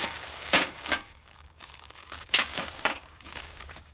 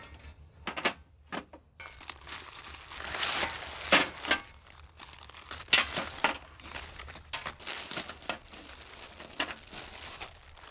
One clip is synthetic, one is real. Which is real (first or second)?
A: second